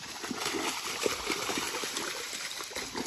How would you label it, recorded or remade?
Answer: recorded